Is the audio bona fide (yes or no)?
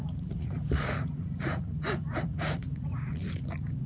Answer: no